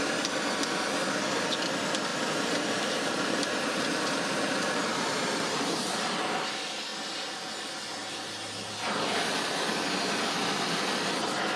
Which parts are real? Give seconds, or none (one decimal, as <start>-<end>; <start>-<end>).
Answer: 0.0-2.1; 6.2-11.6